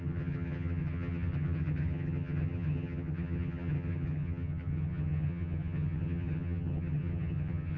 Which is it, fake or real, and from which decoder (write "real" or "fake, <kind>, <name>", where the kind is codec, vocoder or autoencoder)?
fake, vocoder, HiFi-GAN